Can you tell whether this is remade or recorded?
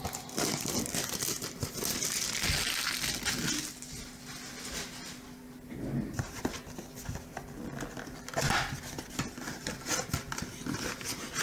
recorded